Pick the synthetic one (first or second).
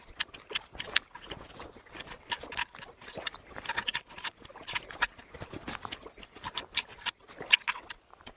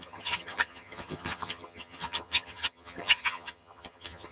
second